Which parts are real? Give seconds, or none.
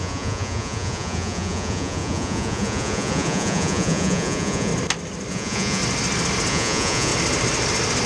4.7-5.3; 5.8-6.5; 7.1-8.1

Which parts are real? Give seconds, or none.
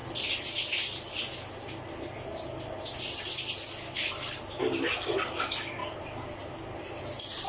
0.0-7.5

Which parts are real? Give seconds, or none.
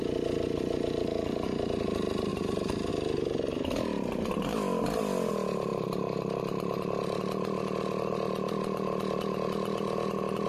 0.0-2.3; 2.9-5.7; 6.3-10.5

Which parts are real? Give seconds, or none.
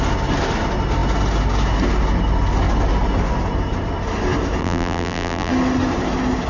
0.0-4.6; 5.5-6.5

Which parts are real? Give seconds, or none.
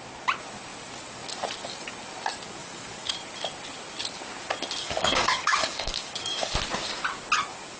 0.0-2.6; 3.1-4.8; 6.5-7.8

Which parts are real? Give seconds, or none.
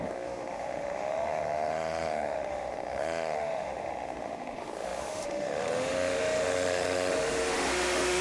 none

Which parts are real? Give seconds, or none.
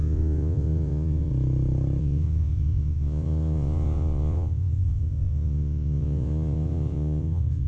1.3-2.0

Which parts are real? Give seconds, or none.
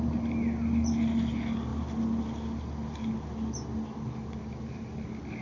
0.0-5.4